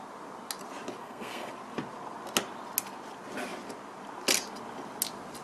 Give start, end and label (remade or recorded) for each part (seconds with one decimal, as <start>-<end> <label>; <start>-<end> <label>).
0.0-1.0 recorded; 1.0-1.5 remade; 1.5-5.4 recorded